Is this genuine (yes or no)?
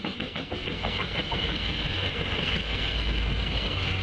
no